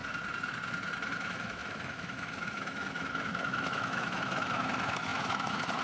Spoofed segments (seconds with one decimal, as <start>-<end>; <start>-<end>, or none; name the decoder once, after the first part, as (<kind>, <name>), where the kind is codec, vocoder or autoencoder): 1.2-5.8 (autoencoder, DAC-VAE)